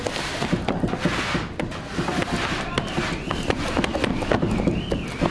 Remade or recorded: recorded